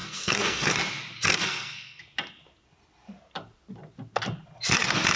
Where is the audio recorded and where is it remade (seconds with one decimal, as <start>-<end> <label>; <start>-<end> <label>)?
0.0-0.7 remade; 0.7-1.3 recorded; 1.3-2.0 remade; 2.0-5.2 recorded